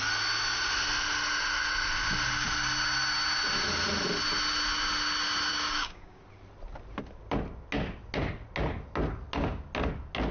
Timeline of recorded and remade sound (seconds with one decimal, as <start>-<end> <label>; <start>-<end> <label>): 0.0-5.5 recorded; 5.5-6.2 remade; 6.2-10.3 recorded